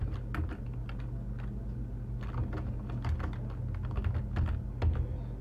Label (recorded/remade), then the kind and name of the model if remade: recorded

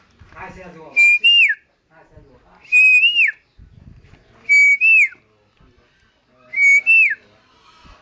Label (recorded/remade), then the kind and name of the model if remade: recorded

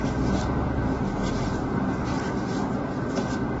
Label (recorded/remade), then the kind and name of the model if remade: recorded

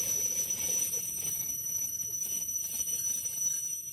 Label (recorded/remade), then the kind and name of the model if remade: remade, vocoder, BigVGAN v2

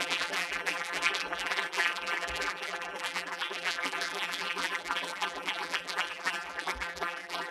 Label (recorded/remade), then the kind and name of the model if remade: remade, vocoder, BigVGAN v2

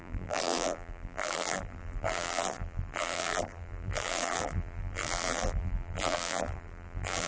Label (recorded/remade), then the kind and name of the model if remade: remade, vocoder, BigVGAN v2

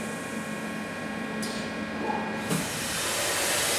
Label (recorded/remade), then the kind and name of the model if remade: recorded